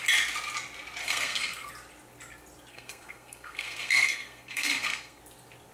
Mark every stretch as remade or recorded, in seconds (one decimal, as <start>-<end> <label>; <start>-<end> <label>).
0.0-1.0 recorded; 1.0-1.7 remade; 1.7-2.7 recorded; 2.7-5.2 remade; 5.2-5.7 recorded